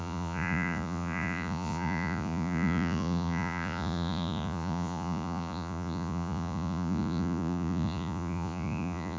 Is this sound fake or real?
fake